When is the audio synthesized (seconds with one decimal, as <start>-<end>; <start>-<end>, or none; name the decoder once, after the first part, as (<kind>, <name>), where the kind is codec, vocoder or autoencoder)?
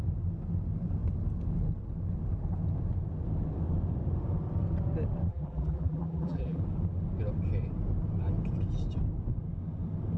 5.3-6.6 (vocoder, BigVGAN v2)